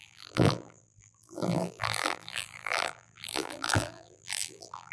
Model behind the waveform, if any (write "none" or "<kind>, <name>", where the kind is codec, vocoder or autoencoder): vocoder, BigVGAN v2